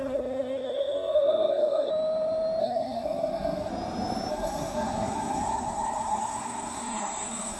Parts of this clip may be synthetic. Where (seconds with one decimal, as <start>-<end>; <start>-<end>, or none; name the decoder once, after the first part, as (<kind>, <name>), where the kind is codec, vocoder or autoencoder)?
0.0-1.9 (codec, SNAC); 2.6-3.7; 4.3-7.6